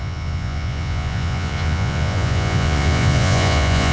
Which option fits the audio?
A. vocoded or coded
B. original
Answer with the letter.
A